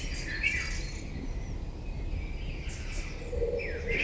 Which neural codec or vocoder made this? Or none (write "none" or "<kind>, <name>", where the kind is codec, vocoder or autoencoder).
none